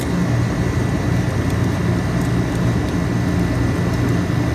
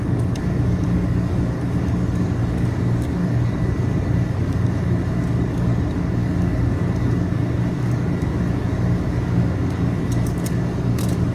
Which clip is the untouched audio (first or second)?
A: first